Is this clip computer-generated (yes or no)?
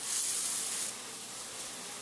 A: no